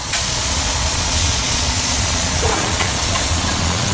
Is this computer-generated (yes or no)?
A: yes